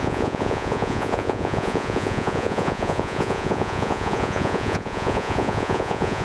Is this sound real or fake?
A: fake